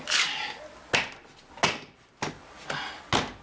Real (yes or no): yes